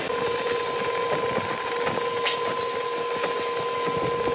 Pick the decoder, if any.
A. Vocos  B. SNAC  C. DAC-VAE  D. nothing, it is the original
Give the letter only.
D